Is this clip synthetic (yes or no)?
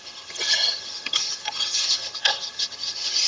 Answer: yes